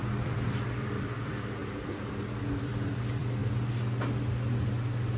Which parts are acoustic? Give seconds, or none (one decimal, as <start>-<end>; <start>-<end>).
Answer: 1.6-2.5; 3.4-5.2